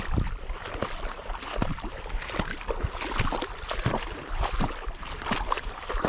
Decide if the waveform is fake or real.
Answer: real